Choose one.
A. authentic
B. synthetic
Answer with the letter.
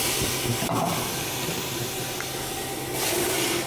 A